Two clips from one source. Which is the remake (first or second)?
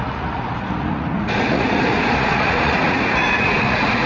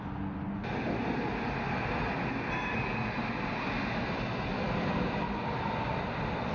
first